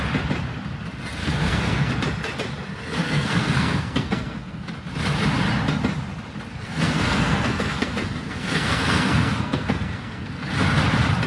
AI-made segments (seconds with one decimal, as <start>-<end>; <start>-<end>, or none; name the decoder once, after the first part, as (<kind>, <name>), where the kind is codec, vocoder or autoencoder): 1.2-1.9 (codec, SNAC); 3.0-4.7; 6.5-10.5